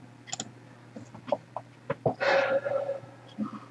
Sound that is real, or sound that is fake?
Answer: real